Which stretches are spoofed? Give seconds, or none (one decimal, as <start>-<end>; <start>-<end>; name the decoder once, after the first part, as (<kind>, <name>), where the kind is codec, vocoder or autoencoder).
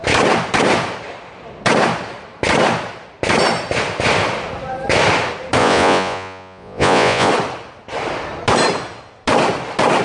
5.6-7.3 (vocoder, Vocos)